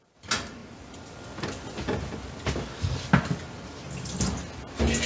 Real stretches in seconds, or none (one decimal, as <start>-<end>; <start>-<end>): 0.0-5.1